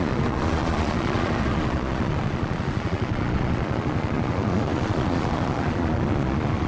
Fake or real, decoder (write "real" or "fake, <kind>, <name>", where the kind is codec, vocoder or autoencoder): fake, vocoder, Vocos